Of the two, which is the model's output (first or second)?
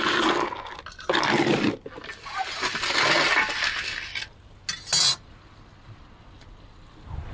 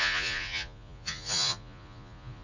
second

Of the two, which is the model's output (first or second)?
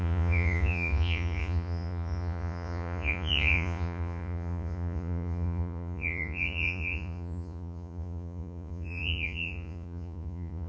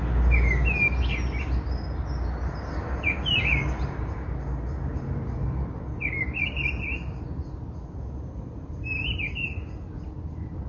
first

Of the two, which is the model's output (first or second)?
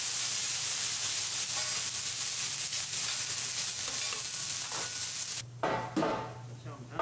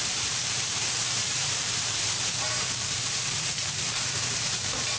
second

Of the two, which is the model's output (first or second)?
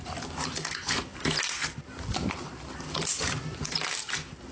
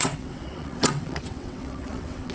second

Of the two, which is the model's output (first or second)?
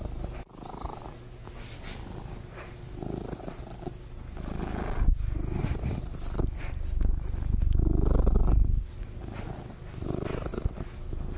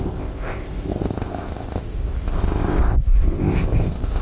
second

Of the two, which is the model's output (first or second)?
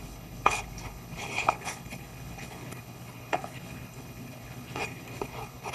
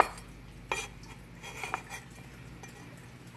first